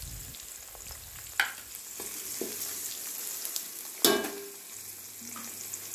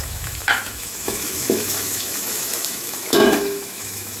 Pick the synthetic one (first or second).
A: second